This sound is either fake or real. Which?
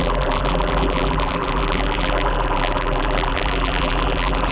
fake